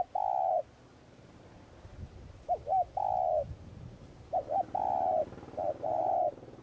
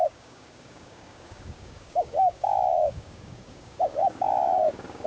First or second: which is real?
first